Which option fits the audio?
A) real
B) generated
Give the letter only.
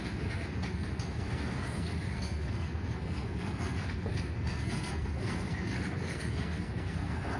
B